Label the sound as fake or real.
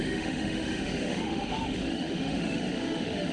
fake